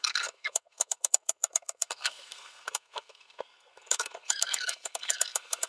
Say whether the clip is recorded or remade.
remade